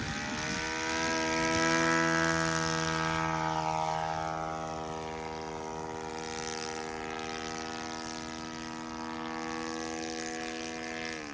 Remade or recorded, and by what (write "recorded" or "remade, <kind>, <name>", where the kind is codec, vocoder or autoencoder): recorded